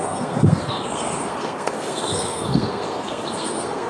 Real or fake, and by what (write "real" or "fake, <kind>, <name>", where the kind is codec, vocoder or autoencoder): fake, codec, SNAC